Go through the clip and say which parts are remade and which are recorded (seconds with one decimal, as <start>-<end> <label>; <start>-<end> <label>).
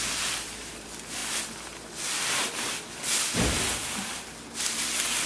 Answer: 0.0-5.3 recorded